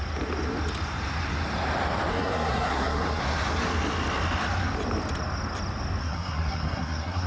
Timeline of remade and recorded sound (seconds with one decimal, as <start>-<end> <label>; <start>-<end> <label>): 0.0-2.1 recorded; 2.1-3.2 remade; 3.2-6.0 recorded; 6.0-7.3 remade